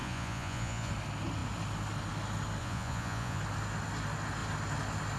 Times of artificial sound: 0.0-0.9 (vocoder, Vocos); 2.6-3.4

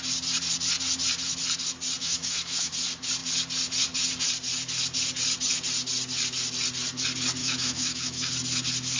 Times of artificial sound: 2.0-2.7 (autoencoder, DAC-VAE); 7.4-8.3

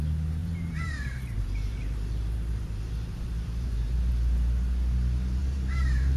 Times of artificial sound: 0.4-4.1 (vocoder, BigVGAN v2); 5.4-6.2

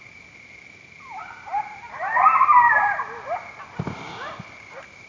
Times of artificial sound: none

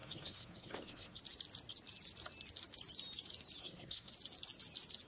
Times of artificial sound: 0.0-1.2 (codec, SNAC); 3.6-4.1

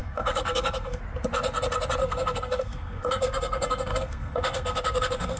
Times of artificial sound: 0.0-1.0 (codec, SNAC); 2.0-5.4

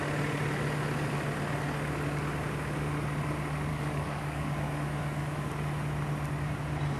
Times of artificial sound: 3.7-5.5 (codec, DAC)